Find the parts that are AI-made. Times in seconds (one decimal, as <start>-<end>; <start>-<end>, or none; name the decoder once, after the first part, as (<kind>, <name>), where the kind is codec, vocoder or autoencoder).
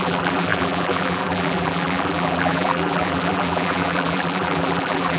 0.0-5.2 (vocoder, BigVGAN v2)